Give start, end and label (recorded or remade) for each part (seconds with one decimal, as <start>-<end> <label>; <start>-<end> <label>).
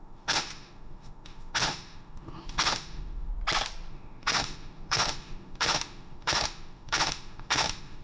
0.0-3.3 remade; 3.3-3.9 recorded; 3.9-8.0 remade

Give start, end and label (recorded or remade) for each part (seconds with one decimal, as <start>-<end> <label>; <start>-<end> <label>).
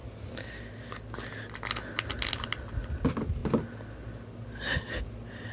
0.0-5.5 recorded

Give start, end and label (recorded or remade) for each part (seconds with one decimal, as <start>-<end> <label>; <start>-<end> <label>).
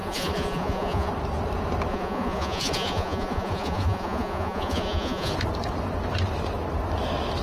0.0-1.1 remade; 1.1-1.9 recorded; 1.9-5.3 remade; 5.3-7.4 recorded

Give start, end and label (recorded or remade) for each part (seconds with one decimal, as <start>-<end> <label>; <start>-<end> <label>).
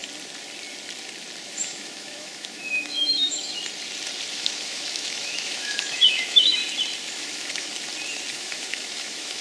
0.0-1.4 recorded; 1.4-3.6 remade; 3.6-4.3 recorded; 4.3-6.6 remade; 6.6-7.1 recorded; 7.1-7.7 remade; 7.7-8.3 recorded; 8.3-9.4 remade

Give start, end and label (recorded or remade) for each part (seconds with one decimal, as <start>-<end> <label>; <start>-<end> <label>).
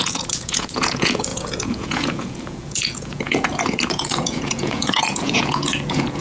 0.0-6.2 remade